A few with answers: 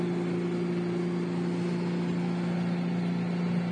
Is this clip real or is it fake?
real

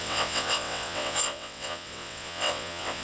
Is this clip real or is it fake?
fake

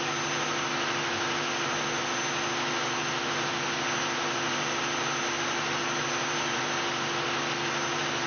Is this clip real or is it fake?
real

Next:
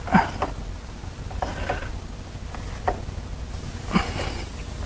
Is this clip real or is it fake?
real